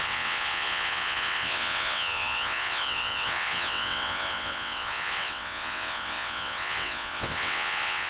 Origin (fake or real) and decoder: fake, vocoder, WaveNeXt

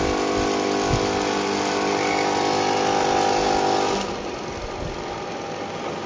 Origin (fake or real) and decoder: real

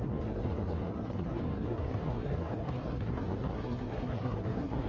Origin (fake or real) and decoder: fake, codec, SNAC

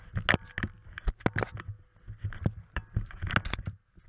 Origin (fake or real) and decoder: real